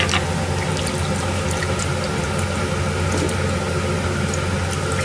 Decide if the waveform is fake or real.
real